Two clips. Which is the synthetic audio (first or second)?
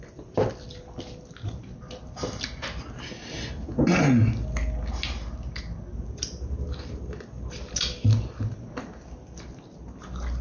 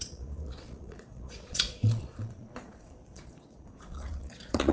second